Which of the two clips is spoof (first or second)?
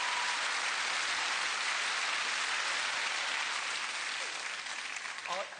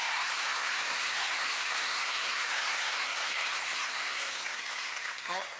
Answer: second